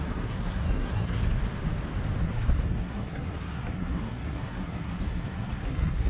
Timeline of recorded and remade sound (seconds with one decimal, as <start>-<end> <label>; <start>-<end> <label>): 0.0-1.2 remade; 1.2-2.2 recorded; 2.2-6.1 remade